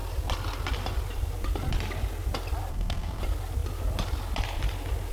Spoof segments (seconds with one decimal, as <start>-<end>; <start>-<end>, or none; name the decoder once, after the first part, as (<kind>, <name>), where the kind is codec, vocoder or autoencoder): 2.7-3.2 (codec, SNAC)

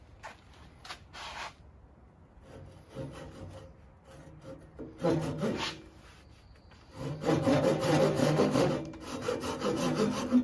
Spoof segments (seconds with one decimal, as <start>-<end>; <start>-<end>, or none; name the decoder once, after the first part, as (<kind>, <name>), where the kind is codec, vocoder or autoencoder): 8.2-8.7 (autoencoder, DAC-VAE)